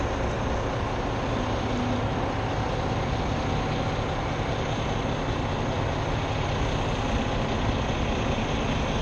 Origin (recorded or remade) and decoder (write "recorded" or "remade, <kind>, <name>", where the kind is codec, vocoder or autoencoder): recorded